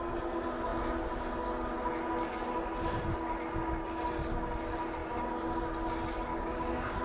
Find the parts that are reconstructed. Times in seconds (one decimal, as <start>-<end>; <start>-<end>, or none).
6.3-7.0